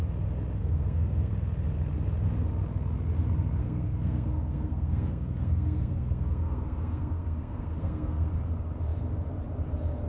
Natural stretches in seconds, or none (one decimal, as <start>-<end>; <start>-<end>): 0.0-0.6; 1.3-3.6; 8.3-10.1